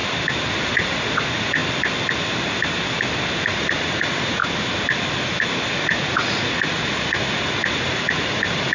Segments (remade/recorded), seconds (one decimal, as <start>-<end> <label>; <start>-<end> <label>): 0.0-0.5 recorded; 0.5-1.6 remade; 1.6-3.4 recorded; 3.4-4.4 remade; 4.4-5.7 recorded; 5.7-8.7 remade